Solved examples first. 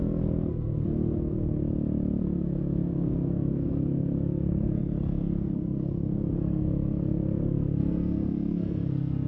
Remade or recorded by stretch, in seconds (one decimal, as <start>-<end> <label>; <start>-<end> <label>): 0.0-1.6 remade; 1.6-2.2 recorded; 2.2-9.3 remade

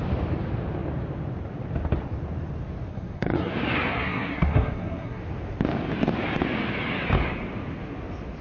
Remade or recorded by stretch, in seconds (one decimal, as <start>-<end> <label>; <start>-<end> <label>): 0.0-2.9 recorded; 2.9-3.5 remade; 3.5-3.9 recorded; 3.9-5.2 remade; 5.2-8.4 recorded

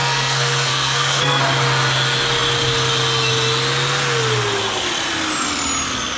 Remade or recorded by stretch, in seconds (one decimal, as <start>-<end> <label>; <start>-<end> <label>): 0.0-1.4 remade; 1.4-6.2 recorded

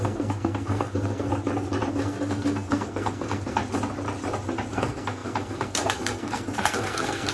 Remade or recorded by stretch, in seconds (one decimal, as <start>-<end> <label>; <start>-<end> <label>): 0.0-1.3 remade; 1.3-1.9 recorded; 1.9-3.6 remade; 3.6-4.7 recorded; 4.7-7.3 remade

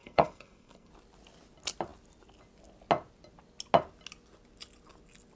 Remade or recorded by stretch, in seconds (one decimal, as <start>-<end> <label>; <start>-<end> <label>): 0.0-0.9 remade; 0.9-5.4 recorded

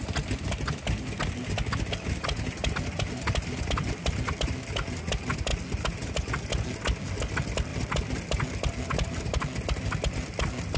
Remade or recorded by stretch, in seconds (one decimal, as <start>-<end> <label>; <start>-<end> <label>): 0.0-10.8 recorded